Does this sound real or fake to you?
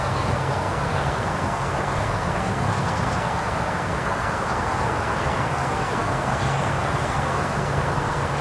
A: fake